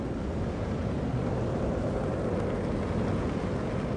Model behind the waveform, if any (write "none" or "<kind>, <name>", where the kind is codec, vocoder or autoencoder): none